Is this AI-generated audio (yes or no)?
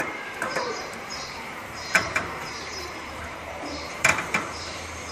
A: yes